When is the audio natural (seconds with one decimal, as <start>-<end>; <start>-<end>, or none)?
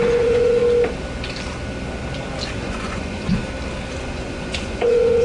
0.6-2.5; 3.4-3.9